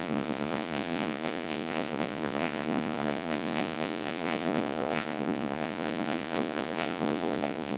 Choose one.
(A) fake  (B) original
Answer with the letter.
A